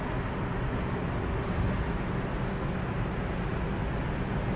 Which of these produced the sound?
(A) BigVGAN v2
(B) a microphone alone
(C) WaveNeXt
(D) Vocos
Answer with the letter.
B